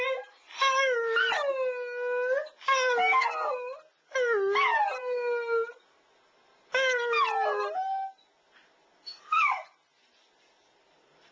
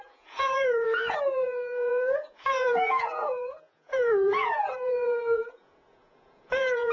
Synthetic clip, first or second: second